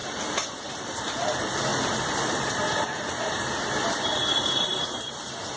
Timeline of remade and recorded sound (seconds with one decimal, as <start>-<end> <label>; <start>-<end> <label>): 0.0-5.6 remade